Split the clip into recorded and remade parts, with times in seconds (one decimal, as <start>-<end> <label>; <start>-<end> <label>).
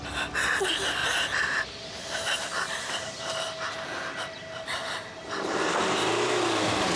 0.0-7.0 recorded